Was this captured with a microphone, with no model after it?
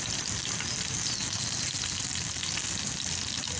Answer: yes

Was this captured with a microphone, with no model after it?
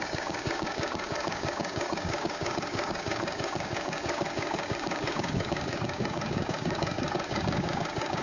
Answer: no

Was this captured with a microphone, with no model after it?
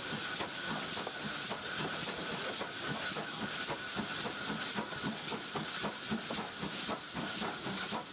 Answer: yes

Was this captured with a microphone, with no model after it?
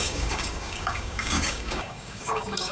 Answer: no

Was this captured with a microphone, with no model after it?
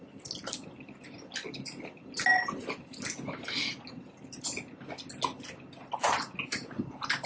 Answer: yes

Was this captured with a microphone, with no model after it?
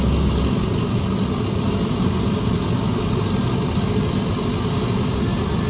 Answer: yes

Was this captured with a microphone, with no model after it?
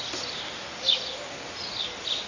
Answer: yes